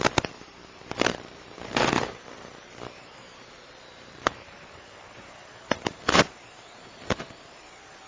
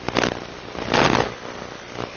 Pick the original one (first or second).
second